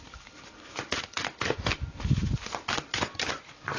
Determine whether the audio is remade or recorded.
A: recorded